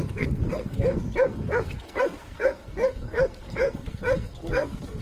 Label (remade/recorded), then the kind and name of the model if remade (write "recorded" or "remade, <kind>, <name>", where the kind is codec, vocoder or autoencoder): remade, codec, SNAC